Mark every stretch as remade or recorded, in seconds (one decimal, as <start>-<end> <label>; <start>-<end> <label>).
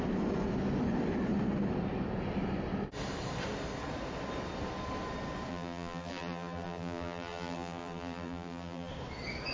0.0-5.5 recorded; 5.5-8.9 remade; 8.9-9.5 recorded